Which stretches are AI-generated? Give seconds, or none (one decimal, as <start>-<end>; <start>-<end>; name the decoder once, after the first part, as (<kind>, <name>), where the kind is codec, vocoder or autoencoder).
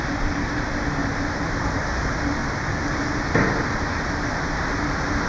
0.0-2.4 (vocoder, BigVGAN v2); 4.3-5.3